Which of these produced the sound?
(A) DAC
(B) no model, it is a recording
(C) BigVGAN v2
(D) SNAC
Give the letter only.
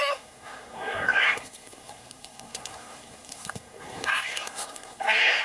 D